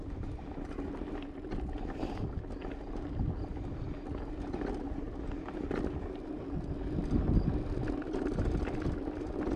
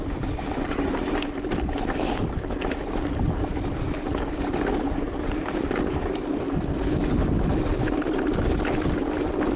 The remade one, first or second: second